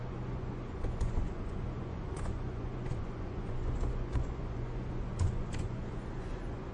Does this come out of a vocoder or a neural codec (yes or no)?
yes